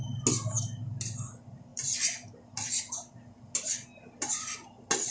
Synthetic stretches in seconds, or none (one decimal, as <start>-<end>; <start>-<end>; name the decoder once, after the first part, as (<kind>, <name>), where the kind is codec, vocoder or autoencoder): none